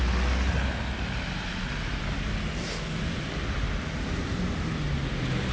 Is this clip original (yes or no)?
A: yes